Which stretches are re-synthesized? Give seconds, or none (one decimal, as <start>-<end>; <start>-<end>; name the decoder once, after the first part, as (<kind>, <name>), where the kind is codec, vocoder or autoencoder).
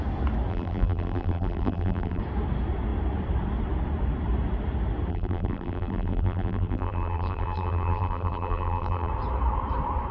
0.5-2.2 (vocoder, BigVGAN v2); 5.1-9.1